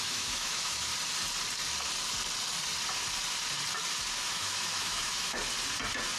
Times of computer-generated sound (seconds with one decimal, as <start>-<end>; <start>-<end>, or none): 0.0-0.9; 4.3-5.4